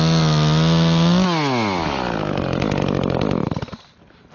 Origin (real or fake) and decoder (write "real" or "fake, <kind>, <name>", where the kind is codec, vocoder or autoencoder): real